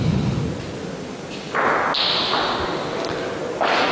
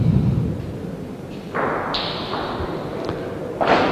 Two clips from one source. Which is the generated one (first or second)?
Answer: second